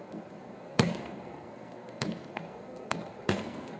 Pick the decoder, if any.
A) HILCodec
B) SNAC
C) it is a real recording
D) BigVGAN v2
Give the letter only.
B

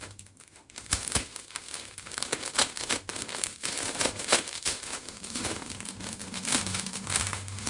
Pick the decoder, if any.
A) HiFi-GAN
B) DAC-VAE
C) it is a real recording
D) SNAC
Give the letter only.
B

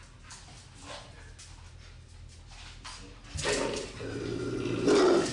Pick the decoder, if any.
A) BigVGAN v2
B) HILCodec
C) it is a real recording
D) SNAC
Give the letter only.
C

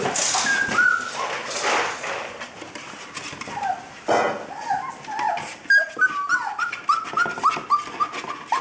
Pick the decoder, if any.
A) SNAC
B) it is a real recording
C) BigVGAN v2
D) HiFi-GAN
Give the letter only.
B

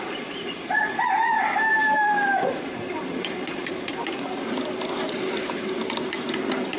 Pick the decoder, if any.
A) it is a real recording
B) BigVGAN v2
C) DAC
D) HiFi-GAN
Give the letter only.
B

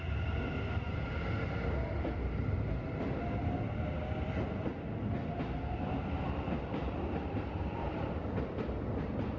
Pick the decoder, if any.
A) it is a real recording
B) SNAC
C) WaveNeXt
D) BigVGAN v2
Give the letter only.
A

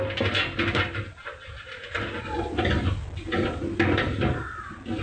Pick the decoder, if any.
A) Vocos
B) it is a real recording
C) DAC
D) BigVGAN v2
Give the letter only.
B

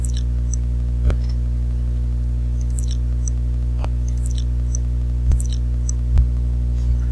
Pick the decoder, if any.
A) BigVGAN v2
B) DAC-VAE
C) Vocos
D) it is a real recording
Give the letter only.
D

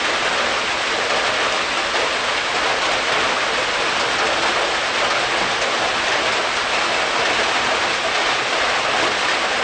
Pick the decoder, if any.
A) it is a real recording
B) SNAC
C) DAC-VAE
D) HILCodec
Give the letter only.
A